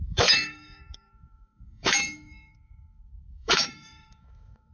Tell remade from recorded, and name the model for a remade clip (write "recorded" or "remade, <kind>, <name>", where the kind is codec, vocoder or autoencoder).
remade, autoencoder, DAC-VAE